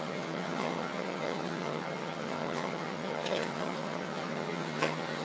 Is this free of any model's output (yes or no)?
no